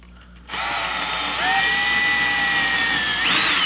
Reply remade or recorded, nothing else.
recorded